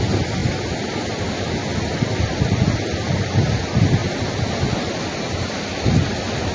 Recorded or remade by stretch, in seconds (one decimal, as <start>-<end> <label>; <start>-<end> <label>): 0.0-6.5 recorded